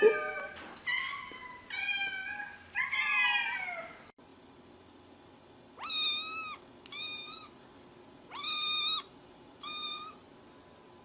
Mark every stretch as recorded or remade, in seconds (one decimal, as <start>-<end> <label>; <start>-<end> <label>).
0.0-11.0 recorded